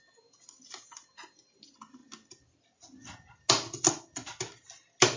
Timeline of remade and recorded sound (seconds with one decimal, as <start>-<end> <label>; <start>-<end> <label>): 0.0-5.2 recorded